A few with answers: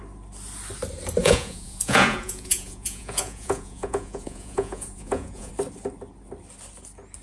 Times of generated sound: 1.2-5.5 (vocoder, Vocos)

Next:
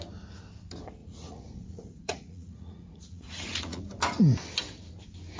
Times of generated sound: 1.0-3.8 (vocoder, Vocos)